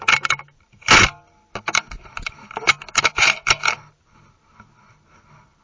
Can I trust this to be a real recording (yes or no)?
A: yes